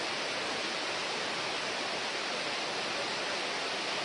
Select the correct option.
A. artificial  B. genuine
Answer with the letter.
B